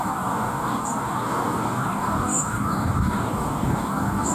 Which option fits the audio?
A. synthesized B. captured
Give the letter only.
A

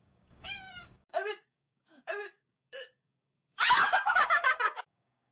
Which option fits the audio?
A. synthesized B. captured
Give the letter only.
A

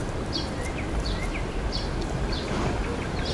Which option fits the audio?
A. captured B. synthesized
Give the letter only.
A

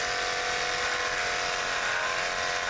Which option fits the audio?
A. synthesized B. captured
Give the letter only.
B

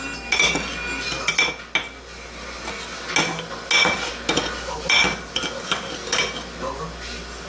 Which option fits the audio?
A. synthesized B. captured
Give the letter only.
B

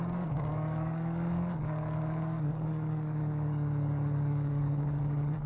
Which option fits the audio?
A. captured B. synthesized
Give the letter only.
B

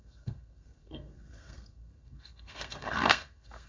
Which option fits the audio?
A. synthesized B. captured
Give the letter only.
A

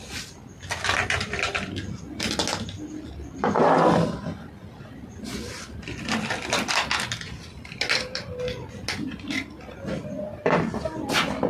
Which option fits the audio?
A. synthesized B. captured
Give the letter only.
B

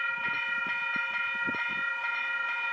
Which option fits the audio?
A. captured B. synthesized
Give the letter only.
A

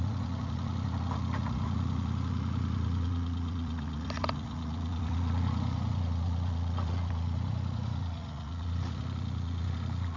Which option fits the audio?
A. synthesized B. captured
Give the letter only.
A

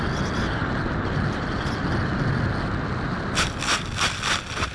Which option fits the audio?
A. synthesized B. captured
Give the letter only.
B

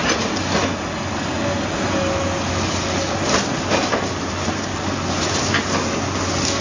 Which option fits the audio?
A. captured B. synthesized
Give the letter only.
A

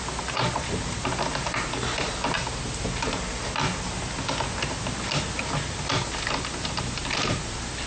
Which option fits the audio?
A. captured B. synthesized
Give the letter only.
A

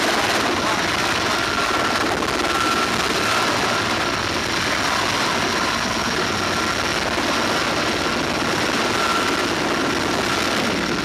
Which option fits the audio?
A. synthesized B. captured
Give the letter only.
B